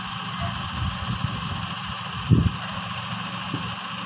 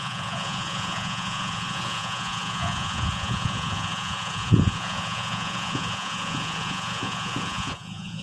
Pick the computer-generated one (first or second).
second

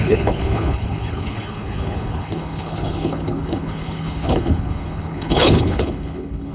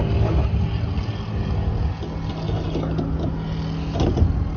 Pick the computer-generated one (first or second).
first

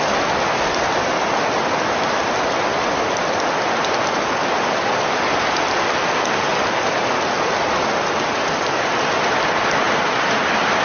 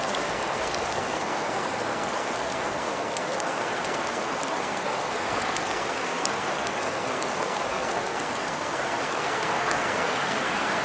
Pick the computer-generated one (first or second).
second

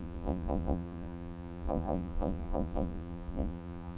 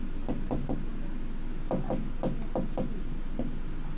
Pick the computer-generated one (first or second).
first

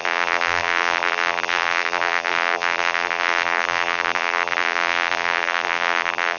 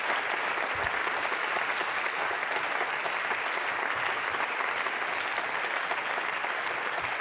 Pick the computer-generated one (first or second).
first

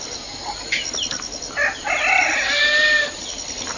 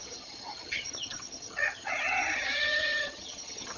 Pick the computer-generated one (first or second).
second